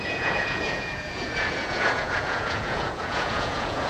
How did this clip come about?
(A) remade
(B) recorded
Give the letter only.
A